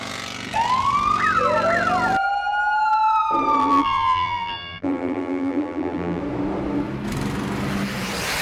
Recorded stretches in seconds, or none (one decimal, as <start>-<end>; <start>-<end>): 0.0-3.6; 6.2-8.4